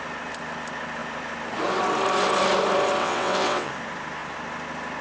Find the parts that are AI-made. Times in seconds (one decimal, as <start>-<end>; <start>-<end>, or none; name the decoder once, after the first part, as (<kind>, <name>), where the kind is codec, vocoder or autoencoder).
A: 3.0-3.7 (vocoder, WaveNeXt)